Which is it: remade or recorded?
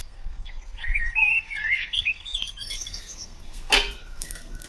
remade